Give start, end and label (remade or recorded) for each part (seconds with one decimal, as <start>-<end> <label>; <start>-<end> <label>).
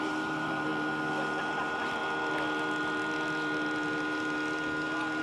0.0-0.7 remade; 0.7-1.4 recorded; 1.4-2.0 remade; 2.0-5.2 recorded